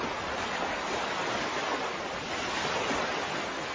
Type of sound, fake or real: real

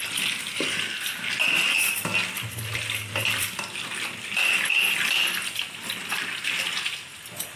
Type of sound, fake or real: real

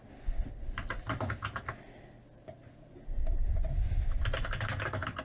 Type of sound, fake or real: real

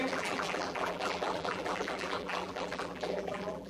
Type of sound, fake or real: fake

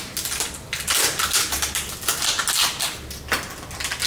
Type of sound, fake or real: real